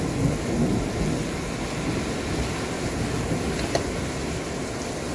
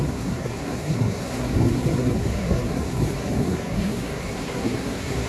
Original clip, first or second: first